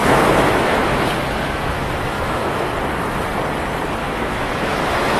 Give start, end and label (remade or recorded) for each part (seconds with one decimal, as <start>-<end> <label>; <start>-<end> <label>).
0.0-2.7 remade; 2.7-4.0 recorded; 4.0-5.2 remade